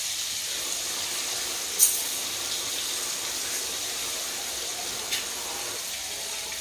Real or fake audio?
real